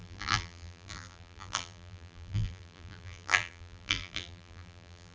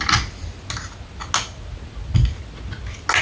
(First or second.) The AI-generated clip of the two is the first